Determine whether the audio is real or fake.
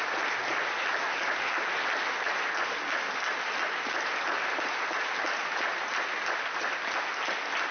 real